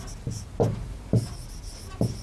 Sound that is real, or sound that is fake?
real